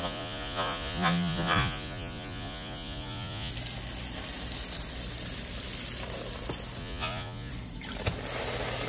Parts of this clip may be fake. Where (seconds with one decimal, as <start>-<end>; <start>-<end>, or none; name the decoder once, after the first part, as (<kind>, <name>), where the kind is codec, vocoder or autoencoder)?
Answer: 0.0-3.5 (vocoder, Vocos); 6.8-7.5